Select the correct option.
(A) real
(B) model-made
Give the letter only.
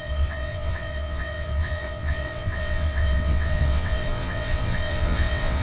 B